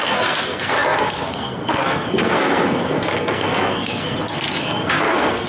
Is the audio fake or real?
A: fake